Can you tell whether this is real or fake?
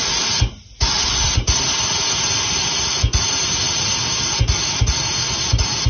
real